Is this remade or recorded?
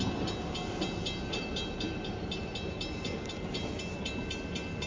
recorded